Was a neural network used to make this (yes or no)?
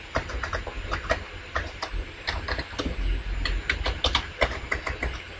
no